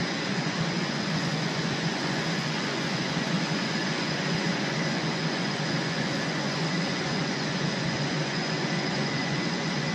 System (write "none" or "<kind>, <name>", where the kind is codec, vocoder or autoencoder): vocoder, Vocos